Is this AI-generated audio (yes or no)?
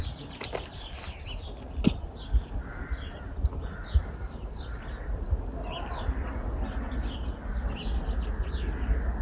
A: no